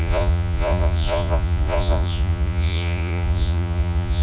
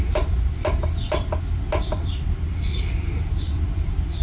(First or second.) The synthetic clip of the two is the first